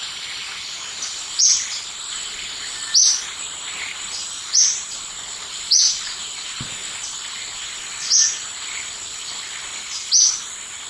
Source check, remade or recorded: recorded